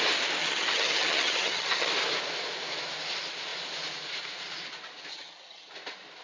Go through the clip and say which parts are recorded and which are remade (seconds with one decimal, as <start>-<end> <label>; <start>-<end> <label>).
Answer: 0.0-0.4 recorded; 0.4-1.9 remade; 1.9-5.1 recorded; 5.1-5.7 remade; 5.7-6.2 recorded